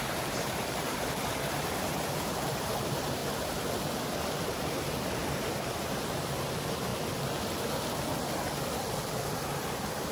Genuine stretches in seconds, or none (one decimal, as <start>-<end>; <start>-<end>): 3.2-4.1; 6.9-9.6